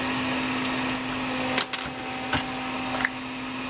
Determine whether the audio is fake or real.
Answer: real